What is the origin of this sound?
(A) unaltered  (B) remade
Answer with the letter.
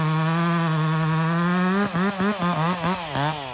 A